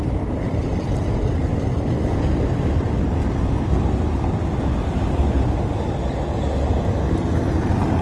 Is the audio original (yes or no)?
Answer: yes